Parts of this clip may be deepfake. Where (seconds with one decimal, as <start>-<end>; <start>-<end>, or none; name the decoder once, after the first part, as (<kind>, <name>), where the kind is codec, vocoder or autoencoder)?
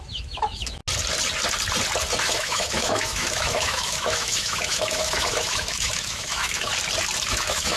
0.0-0.8 (autoencoder, DAC-VAE); 2.2-6.7; 7.3-7.8